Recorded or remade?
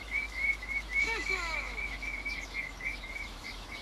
remade